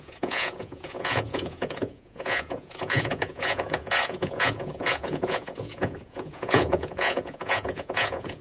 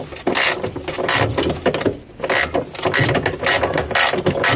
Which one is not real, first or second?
first